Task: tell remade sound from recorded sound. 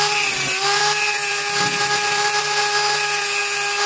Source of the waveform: recorded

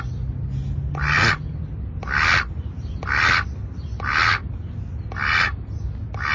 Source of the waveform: recorded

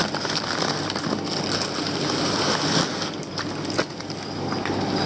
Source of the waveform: recorded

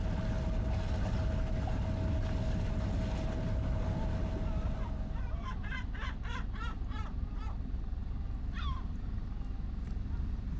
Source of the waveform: recorded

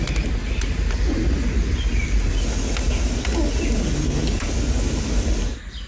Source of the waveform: recorded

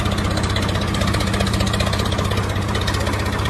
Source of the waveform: recorded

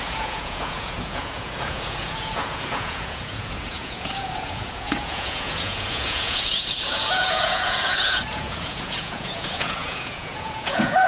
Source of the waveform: remade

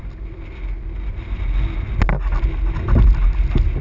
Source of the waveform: recorded